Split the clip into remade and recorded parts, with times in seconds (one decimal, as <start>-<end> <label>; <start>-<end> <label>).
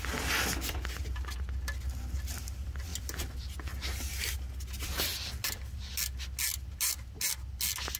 0.0-8.0 recorded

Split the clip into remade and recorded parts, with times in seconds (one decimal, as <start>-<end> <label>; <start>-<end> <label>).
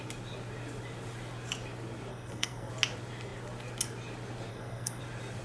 0.0-2.1 recorded; 2.1-2.7 remade; 2.7-4.5 recorded; 4.5-5.0 remade; 5.0-5.4 recorded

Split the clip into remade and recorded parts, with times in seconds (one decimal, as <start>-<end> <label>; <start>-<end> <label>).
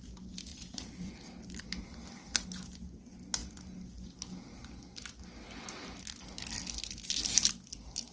0.0-0.5 recorded; 0.5-1.1 remade; 1.1-8.1 recorded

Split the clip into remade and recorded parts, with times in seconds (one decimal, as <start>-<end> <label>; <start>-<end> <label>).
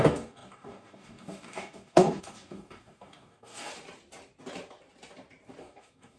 0.0-3.7 remade; 3.7-5.6 recorded; 5.6-6.2 remade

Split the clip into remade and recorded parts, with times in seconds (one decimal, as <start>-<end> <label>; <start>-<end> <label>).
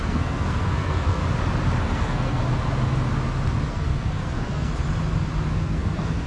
0.0-1.2 remade; 1.2-1.8 recorded; 1.8-2.4 remade; 2.4-3.7 recorded; 3.7-4.7 remade; 4.7-5.5 recorded; 5.5-6.3 remade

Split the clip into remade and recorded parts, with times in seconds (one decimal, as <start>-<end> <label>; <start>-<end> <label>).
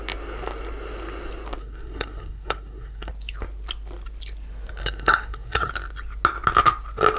0.0-1.6 recorded; 1.6-3.1 remade; 3.1-4.8 recorded; 4.8-5.7 remade; 5.7-7.2 recorded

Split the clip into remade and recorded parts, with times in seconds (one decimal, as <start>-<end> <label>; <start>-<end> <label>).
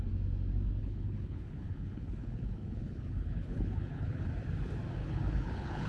0.0-0.8 recorded; 0.8-4.3 remade; 4.3-5.0 recorded; 5.0-5.9 remade